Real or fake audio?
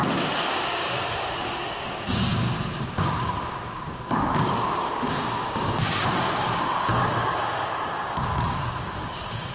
fake